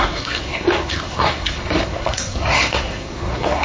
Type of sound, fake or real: fake